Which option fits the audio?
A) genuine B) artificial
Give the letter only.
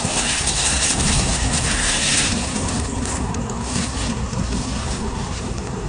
B